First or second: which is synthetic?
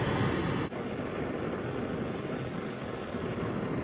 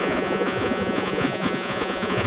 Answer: second